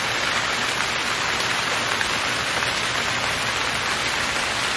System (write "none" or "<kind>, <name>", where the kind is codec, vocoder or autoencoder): none